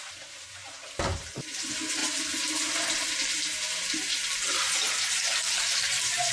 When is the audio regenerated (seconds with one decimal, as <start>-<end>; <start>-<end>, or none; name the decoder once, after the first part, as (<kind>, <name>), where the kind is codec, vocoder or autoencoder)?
0.0-2.0 (vocoder, BigVGAN v2); 5.1-6.3